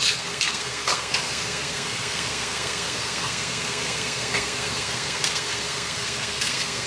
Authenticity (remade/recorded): remade